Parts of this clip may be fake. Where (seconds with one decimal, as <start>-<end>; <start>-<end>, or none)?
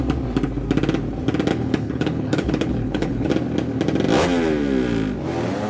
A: 1.5-3.3